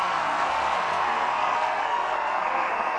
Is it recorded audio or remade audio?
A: remade